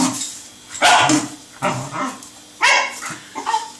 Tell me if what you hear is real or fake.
real